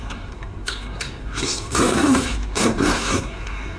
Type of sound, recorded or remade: remade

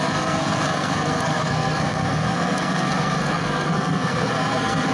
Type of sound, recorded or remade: remade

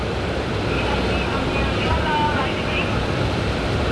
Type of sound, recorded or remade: recorded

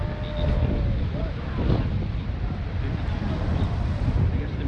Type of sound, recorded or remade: recorded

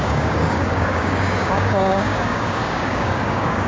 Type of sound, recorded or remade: remade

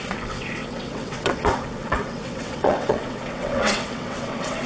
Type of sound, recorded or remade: remade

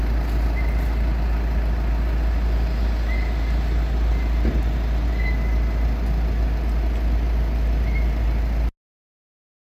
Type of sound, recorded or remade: recorded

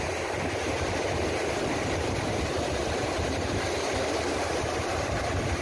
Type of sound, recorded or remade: remade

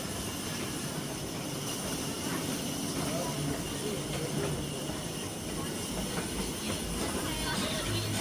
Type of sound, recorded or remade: recorded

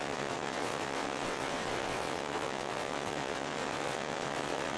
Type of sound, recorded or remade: remade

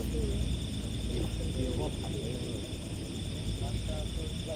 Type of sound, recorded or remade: recorded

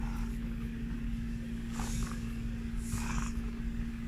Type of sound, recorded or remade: remade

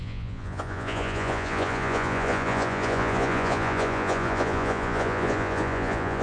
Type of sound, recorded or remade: remade